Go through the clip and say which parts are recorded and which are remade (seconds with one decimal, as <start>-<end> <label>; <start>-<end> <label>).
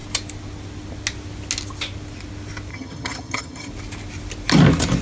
0.0-2.7 recorded; 2.7-3.7 remade; 3.7-5.0 recorded